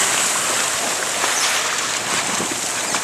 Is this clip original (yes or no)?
yes